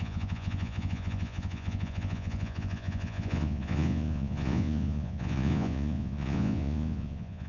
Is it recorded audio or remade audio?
remade